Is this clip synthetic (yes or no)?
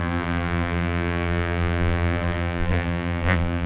yes